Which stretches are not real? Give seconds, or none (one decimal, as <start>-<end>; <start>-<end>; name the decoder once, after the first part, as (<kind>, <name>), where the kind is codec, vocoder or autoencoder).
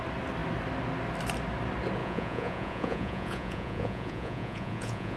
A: 2.0-5.2 (vocoder, Vocos)